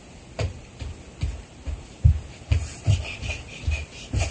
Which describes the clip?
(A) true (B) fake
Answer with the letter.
A